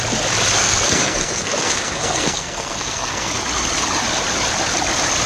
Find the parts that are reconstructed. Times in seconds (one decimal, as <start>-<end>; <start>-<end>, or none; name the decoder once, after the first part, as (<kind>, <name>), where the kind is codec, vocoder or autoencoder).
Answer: 0.6-3.3 (codec, SNAC)